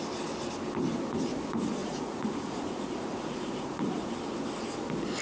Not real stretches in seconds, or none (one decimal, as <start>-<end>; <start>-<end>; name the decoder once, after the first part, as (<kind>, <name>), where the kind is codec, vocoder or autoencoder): 1.8-4.1 (vocoder, Vocos)